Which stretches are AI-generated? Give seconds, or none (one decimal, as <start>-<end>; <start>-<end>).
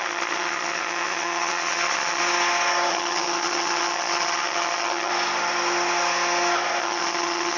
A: 0.0-2.2; 2.9-5.1; 6.8-7.6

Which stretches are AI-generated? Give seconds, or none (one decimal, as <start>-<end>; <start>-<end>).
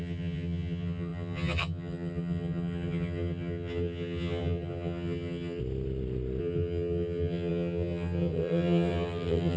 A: 0.0-5.6; 6.4-9.6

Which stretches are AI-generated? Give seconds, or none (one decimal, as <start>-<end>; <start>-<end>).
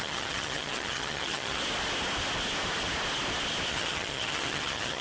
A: 0.0-1.6; 3.7-5.0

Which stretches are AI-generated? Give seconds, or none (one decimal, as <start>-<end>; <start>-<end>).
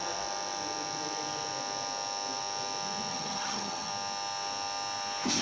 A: 3.1-3.9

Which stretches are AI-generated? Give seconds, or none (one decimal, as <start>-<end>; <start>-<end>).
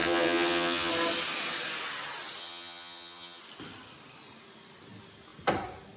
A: 0.0-0.9; 2.4-3.4